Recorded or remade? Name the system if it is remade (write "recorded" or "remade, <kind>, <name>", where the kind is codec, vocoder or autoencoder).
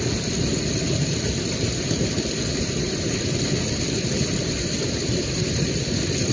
recorded